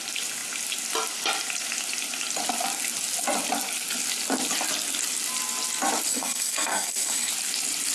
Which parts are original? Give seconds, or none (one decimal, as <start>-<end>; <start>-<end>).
0.0-6.1; 7.3-7.9